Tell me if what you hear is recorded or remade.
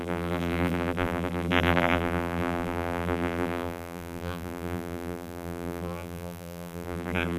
remade